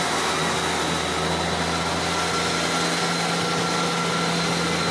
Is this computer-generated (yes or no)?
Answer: no